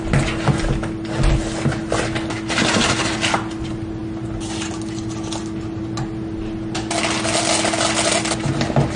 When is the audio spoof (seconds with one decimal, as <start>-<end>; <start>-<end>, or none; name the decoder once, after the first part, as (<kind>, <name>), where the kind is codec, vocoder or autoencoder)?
none